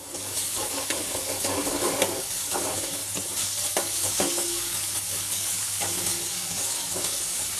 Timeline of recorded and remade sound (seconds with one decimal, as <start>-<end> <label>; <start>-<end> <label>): 0.0-3.0 remade; 3.0-3.7 recorded; 3.7-7.6 remade